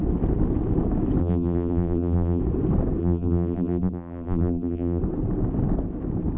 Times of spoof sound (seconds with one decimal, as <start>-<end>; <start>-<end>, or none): 1.2-2.4; 3.0-5.0